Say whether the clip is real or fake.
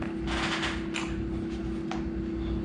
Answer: real